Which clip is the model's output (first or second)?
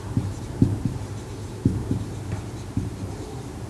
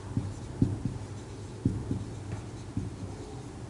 first